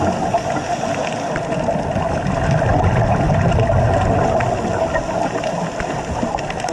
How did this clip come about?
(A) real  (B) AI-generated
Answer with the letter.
A